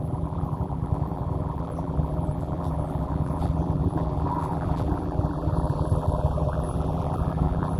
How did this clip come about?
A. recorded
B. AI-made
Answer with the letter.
B